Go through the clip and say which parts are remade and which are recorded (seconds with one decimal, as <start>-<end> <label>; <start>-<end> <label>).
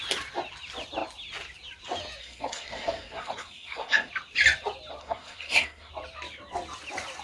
0.0-2.2 recorded; 2.2-4.1 remade; 4.1-5.0 recorded; 5.0-5.9 remade; 5.9-7.2 recorded